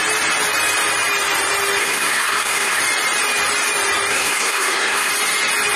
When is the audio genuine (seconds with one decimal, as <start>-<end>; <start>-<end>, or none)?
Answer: 0.0-1.8; 2.8-4.1; 5.1-5.8